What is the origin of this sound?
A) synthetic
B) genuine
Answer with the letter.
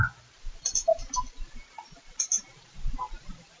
B